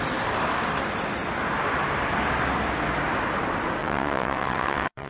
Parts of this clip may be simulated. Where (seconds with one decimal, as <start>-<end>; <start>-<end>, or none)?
3.8-5.1